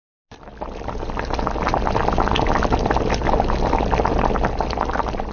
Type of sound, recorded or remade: recorded